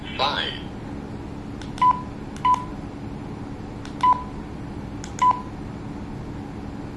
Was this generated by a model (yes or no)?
no